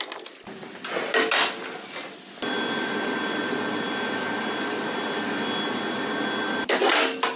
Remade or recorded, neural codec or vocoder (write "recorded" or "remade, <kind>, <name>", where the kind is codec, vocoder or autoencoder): recorded